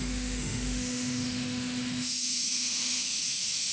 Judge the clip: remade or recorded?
remade